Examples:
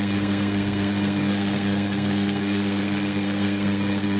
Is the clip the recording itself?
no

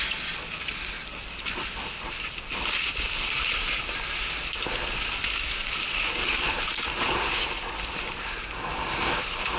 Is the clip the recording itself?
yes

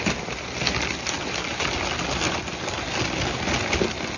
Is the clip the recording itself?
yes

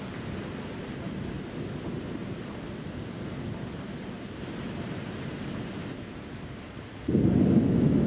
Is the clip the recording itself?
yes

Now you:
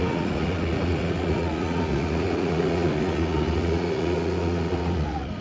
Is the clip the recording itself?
no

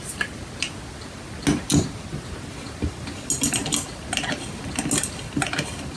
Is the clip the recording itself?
yes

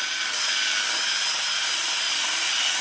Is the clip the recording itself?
yes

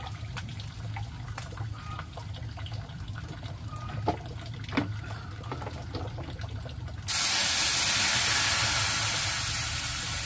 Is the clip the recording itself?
yes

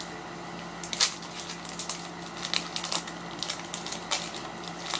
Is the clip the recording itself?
yes